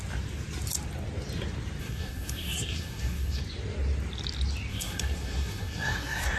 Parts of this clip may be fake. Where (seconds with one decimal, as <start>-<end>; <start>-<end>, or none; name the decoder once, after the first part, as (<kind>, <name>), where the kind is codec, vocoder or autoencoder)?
1.8-3.4 (codec, SNAC); 4.7-6.4